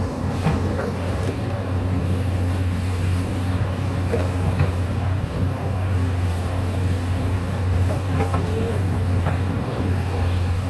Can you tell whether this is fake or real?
fake